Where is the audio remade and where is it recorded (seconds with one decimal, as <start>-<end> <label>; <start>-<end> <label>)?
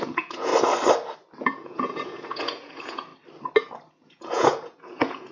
0.0-0.5 remade; 0.5-1.4 recorded; 1.4-3.1 remade; 3.1-3.9 recorded; 3.9-5.3 remade